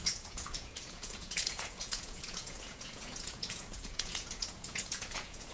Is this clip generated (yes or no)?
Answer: yes